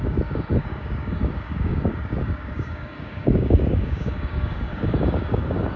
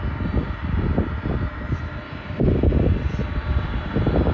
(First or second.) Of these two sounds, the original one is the second